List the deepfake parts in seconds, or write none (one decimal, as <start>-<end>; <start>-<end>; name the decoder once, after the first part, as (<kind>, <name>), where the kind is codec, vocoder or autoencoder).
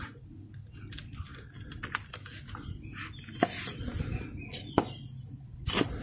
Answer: none